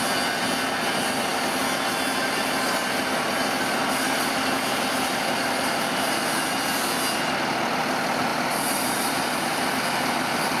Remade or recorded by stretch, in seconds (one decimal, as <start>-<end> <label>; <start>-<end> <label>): 0.0-8.3 recorded; 8.3-9.8 remade; 9.8-10.6 recorded